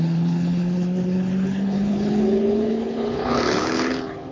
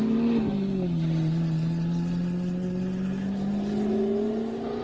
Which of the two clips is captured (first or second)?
second